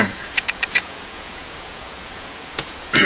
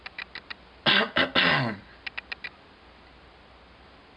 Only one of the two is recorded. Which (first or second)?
second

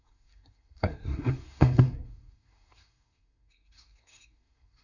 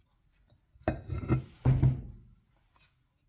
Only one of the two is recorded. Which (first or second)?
second